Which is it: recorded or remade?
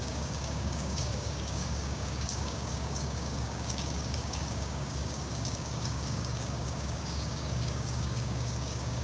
remade